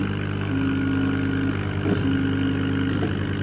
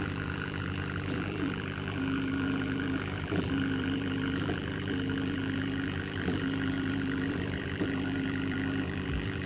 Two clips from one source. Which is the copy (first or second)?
second